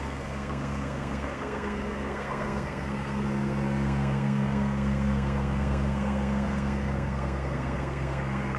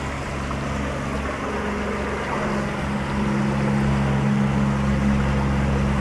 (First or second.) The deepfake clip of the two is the first